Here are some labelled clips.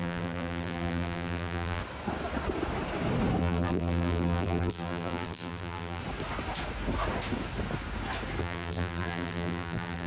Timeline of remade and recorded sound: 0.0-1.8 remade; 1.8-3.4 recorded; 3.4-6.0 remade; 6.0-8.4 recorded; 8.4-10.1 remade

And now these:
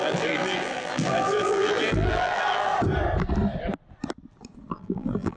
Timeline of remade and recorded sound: 0.0-2.7 remade; 2.7-4.7 recorded; 4.7-5.4 remade